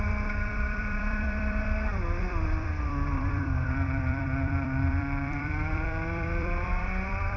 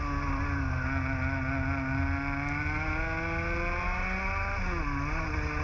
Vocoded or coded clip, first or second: first